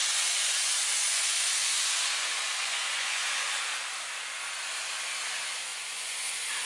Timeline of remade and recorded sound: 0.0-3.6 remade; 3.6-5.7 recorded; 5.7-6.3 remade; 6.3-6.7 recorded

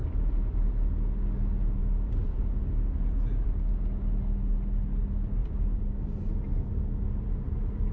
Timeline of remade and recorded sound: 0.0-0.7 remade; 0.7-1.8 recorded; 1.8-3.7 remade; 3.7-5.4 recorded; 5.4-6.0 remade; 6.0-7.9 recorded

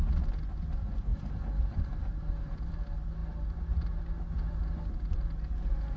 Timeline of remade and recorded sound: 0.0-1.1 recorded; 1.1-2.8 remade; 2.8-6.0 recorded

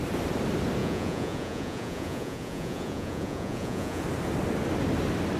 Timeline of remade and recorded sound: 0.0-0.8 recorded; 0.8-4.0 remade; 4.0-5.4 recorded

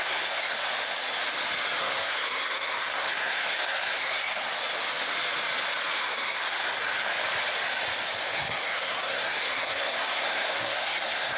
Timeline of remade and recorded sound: 0.0-0.6 remade; 0.6-1.8 recorded; 1.8-4.5 remade; 4.5-6.0 recorded; 6.0-7.1 remade; 7.1-8.3 recorded; 8.3-11.4 remade